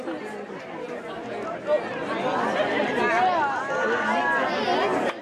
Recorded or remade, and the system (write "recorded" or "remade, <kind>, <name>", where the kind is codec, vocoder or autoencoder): recorded